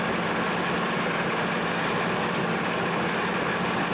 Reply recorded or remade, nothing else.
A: recorded